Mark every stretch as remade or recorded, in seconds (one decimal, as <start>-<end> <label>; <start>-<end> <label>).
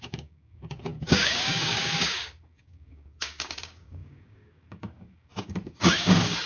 0.0-6.5 remade